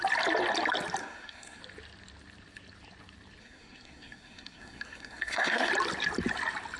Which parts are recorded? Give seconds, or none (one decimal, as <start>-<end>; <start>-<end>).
0.0-1.0; 1.6-3.4; 5.7-6.8